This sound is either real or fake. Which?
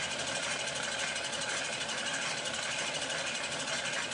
real